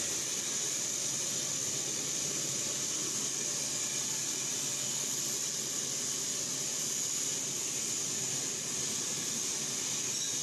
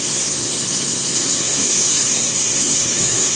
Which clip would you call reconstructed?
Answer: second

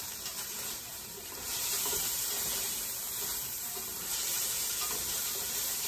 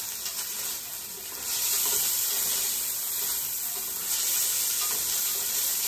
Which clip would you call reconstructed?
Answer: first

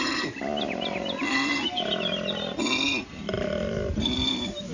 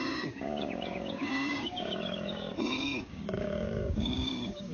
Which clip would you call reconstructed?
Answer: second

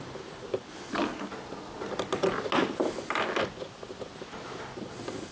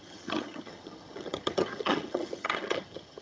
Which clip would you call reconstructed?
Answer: second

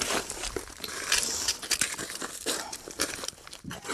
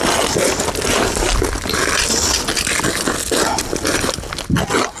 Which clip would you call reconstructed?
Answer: first